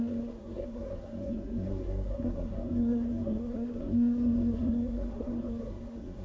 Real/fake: fake